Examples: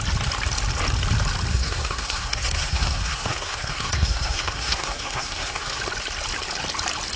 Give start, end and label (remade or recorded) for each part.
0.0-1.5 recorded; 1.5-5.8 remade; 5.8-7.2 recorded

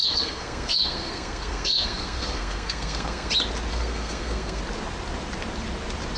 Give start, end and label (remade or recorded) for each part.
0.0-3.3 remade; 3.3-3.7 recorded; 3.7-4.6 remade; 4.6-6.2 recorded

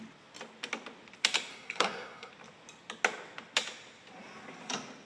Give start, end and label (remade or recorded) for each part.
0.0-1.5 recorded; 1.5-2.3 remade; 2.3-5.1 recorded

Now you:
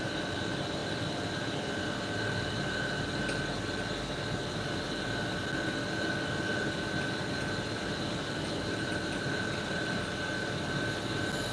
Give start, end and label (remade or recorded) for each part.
0.0-11.5 recorded

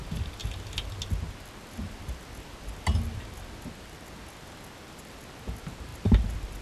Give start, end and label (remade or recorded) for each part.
0.0-6.6 recorded